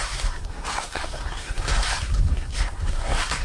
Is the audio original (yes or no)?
no